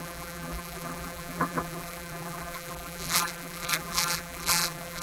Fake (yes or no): yes